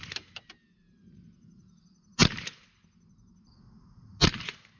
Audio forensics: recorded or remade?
recorded